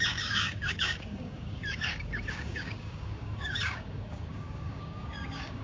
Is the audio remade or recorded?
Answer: remade